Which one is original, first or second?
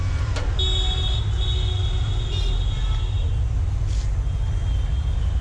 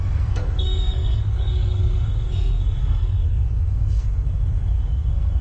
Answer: first